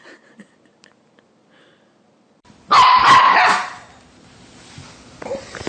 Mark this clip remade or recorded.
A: recorded